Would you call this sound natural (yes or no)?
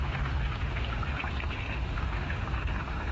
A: no